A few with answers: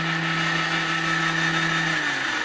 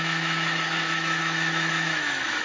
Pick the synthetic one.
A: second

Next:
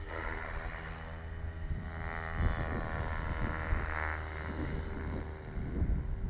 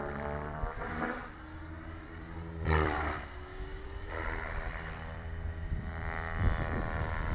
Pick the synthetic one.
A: second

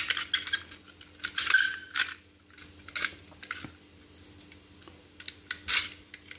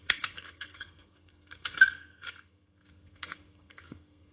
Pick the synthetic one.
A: second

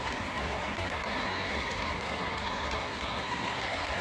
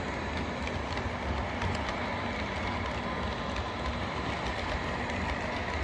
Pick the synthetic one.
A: first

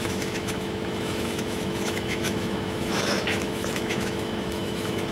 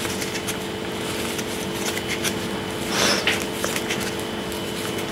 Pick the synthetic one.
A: first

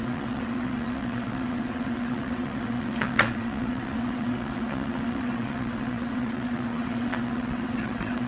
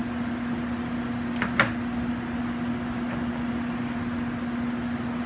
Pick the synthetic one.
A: first